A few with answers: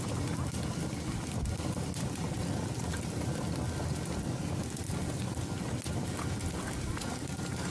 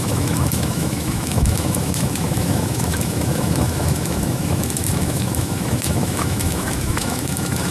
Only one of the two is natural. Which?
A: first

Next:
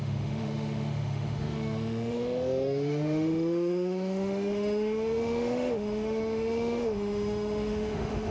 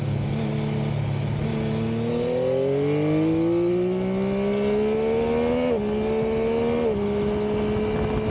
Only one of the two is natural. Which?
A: second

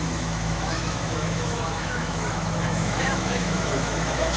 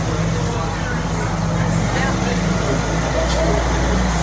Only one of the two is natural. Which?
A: second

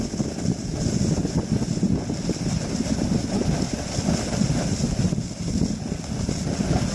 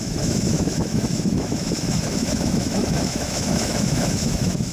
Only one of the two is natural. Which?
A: first